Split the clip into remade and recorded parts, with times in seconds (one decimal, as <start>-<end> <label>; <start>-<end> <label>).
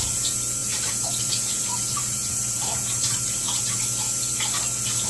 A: 0.0-0.6 recorded; 0.6-3.7 remade; 3.7-5.1 recorded